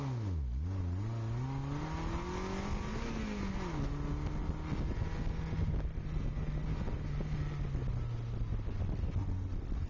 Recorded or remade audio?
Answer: recorded